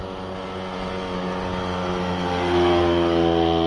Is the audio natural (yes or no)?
yes